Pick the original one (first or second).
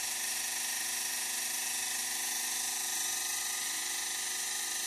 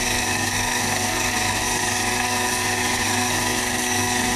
first